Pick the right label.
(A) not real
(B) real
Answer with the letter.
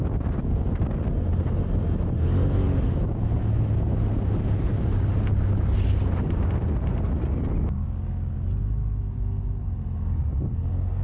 B